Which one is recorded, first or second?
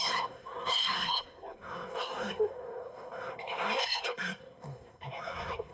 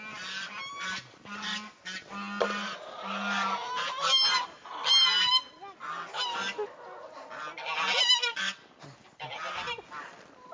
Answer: second